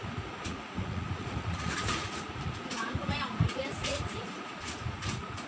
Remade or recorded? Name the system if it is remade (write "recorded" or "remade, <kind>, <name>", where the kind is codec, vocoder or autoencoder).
remade, vocoder, Vocos